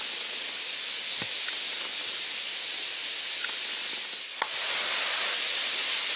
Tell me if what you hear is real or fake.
real